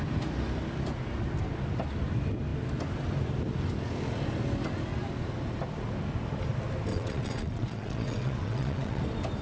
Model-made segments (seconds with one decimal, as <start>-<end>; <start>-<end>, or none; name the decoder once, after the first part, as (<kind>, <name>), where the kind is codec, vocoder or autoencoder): 6.9-9.0 (vocoder, WaveNeXt)